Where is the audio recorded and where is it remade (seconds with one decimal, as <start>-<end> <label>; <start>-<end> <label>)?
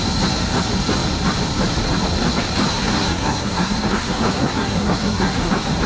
0.0-2.7 recorded; 2.7-5.5 remade; 5.5-5.9 recorded